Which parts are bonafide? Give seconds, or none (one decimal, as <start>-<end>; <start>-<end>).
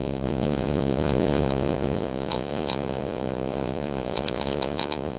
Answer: none